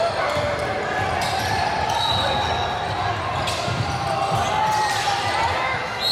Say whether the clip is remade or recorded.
recorded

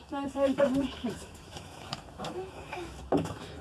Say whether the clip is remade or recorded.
remade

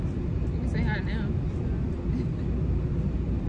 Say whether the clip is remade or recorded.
recorded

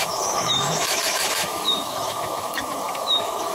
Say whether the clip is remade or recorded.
remade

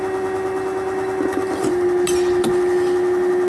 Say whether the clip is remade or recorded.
recorded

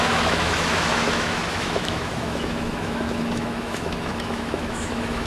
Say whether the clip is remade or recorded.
remade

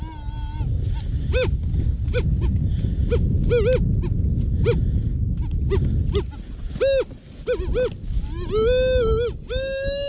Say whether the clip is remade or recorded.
recorded